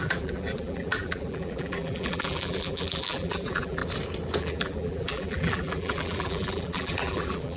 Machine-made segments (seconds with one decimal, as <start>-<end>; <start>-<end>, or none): 0.0-3.8; 4.4-7.6